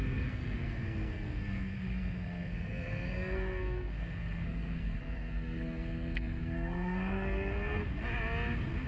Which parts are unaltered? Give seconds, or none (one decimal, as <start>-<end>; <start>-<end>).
7.8-8.9